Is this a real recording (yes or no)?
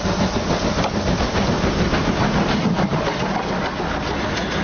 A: yes